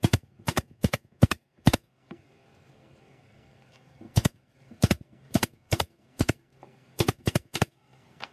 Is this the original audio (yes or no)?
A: no